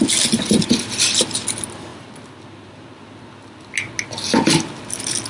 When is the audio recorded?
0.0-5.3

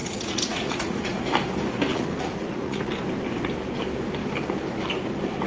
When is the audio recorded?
1.2-1.9; 2.9-5.5

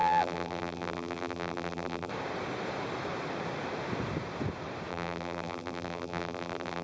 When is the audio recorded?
2.1-4.9

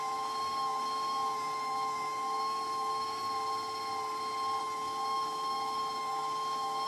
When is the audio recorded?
3.2-4.6

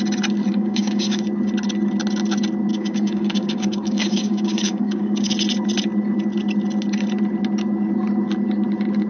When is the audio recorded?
0.0-0.5; 1.2-2.7; 5.3-9.1